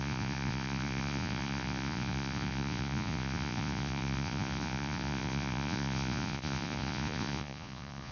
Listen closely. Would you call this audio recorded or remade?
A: remade